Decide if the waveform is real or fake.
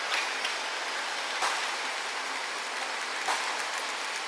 real